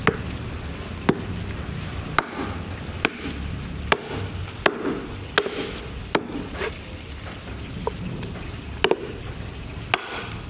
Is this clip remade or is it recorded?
recorded